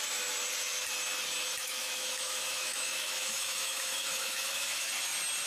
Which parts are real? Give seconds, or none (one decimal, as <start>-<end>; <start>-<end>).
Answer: 0.0-1.6; 4.9-5.5